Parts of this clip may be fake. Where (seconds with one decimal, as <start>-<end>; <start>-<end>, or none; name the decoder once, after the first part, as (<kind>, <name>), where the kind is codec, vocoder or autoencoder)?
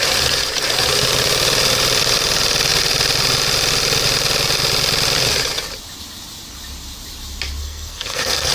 7.6-8.5 (codec, SNAC)